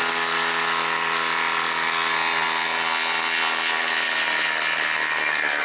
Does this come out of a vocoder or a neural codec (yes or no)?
no